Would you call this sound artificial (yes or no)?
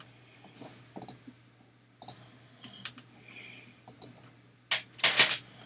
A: no